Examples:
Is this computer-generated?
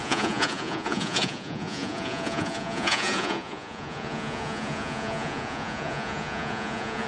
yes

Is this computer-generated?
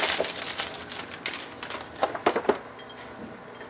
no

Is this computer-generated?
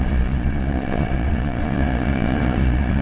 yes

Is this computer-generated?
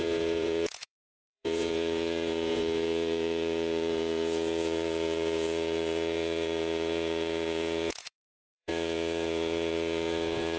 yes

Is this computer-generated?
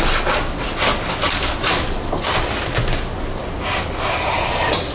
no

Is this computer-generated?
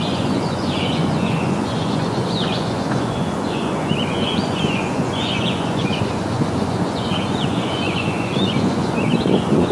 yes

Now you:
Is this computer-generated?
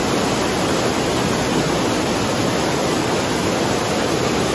no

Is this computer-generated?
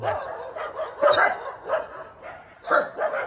no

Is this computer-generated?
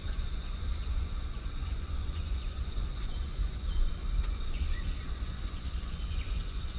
yes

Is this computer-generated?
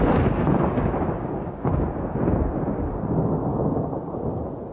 no